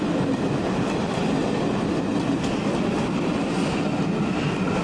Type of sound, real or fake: real